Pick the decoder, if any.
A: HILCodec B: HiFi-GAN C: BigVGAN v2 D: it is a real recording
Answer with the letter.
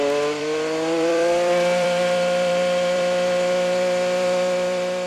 C